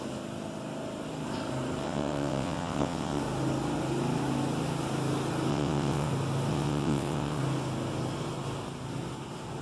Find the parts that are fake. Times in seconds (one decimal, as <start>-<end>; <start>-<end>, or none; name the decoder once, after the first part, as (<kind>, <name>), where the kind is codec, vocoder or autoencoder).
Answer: 1.8-3.2 (vocoder, WaveNeXt); 5.5-6.1; 6.5-7.4